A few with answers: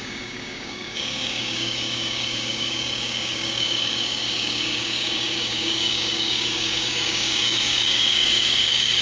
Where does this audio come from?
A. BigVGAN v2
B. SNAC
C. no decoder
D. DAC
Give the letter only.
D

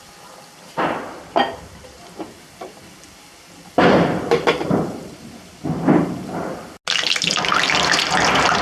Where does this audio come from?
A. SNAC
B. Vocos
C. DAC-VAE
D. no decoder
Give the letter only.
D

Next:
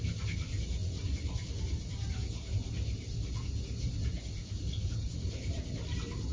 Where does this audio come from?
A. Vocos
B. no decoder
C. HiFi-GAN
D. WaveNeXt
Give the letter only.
B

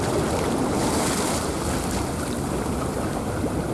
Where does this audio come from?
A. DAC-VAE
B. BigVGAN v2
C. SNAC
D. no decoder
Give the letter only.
B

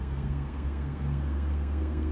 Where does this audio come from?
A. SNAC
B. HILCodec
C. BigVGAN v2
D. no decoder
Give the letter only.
A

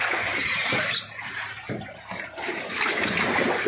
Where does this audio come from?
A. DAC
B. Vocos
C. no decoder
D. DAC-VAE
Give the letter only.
C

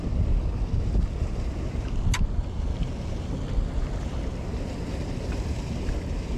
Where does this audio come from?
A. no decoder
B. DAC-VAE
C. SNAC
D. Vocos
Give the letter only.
A